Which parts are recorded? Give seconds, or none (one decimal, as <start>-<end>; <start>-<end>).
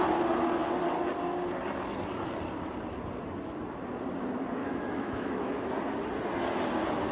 0.0-4.6; 5.7-7.1